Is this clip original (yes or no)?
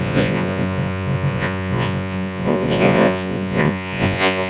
no